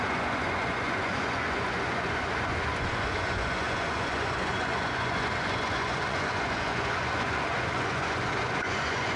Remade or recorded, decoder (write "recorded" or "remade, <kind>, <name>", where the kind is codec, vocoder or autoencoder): remade, vocoder, Vocos